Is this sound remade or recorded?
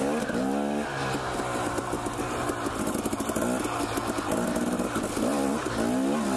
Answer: recorded